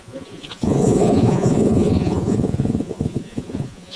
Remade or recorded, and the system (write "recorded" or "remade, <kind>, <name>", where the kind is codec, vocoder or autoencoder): remade, vocoder, Vocos